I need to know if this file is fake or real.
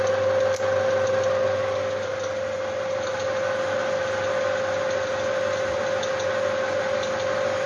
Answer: real